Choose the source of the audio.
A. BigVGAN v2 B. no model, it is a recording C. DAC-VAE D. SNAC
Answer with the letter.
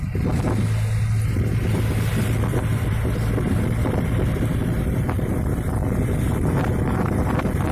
B